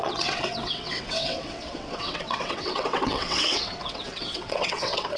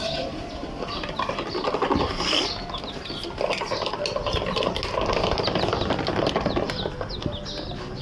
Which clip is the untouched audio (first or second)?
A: second